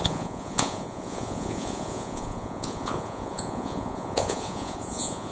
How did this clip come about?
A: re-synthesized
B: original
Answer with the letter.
A